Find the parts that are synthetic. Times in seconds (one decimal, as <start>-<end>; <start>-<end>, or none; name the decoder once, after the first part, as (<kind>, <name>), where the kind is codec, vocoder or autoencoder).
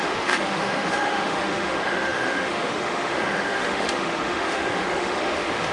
0.0-5.7 (autoencoder, DAC-VAE)